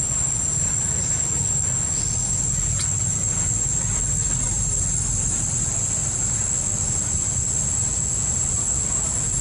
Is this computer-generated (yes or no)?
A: no